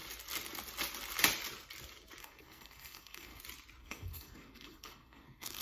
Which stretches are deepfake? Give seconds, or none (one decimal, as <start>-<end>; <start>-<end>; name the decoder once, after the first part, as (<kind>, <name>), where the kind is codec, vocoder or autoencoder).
2.2-3.4 (codec, SNAC); 3.8-5.6

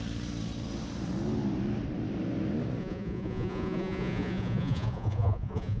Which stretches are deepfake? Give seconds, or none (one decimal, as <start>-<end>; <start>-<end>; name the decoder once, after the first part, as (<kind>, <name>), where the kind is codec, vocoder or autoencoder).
2.8-5.8 (vocoder, Vocos)

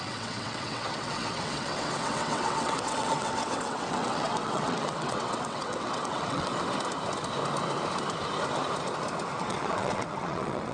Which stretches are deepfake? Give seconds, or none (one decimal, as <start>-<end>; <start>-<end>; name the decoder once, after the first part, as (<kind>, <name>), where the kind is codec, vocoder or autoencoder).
0.0-6.5 (vocoder, WaveNeXt); 9.4-10.7

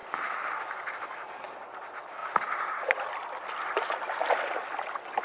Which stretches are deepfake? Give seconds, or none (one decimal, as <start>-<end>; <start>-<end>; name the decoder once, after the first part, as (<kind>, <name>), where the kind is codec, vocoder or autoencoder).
none

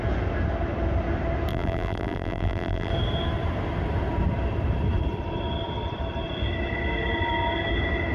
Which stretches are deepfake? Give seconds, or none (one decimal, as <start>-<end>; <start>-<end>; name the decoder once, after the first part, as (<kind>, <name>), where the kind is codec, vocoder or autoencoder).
1.5-2.9 (vocoder, BigVGAN v2)